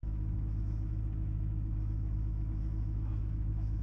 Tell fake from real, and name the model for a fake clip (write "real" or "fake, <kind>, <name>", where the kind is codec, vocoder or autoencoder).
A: fake, autoencoder, DAC-VAE